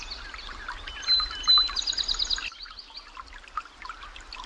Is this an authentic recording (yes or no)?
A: yes